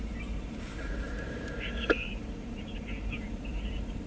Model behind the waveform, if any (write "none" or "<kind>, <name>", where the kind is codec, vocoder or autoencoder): vocoder, BigVGAN v2